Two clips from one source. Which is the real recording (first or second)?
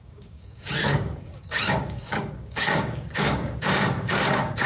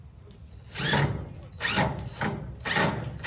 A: second